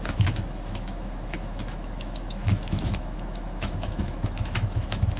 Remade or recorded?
remade